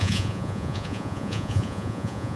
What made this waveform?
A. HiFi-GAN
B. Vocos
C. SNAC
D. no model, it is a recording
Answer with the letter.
B